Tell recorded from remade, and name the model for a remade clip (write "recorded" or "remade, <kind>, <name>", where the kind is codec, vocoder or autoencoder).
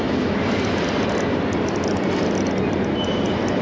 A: recorded